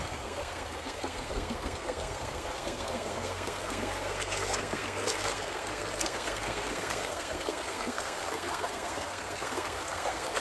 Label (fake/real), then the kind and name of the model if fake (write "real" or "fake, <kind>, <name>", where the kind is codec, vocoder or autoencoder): fake, codec, SNAC